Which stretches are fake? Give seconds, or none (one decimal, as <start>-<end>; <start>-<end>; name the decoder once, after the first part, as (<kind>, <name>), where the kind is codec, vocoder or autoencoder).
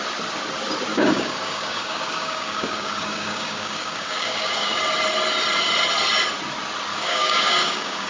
0.9-4.8 (codec, DAC); 6.9-8.1